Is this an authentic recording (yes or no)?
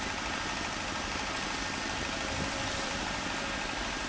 no